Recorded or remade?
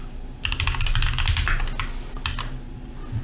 recorded